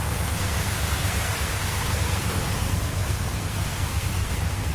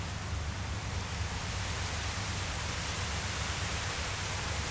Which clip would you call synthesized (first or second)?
first